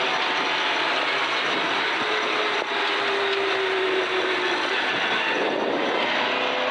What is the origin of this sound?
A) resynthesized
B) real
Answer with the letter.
B